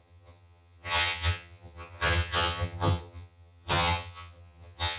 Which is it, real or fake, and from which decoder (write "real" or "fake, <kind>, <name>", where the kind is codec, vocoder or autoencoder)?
fake, vocoder, HiFi-GAN